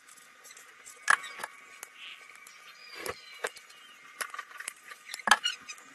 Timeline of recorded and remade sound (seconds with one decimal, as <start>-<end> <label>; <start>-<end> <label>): 0.0-2.1 recorded; 2.1-5.2 remade; 5.2-5.9 recorded